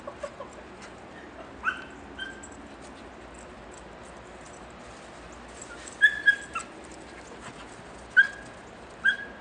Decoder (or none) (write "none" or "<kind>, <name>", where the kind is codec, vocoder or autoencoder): none